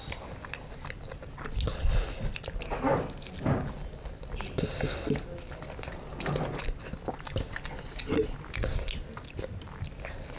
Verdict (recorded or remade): recorded